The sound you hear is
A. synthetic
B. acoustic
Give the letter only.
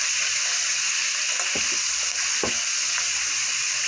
B